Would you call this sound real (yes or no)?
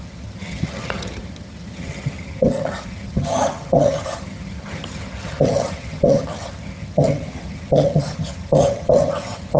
no